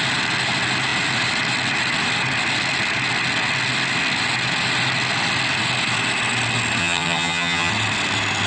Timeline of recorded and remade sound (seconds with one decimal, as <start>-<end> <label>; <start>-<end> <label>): 0.0-6.8 recorded; 6.8-7.7 remade; 7.7-8.5 recorded